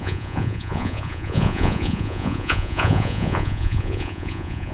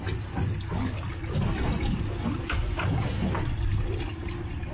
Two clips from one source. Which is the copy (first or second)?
first